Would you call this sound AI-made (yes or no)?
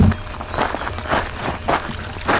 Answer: no